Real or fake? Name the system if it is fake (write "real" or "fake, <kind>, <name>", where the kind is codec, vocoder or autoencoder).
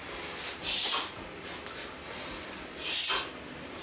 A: real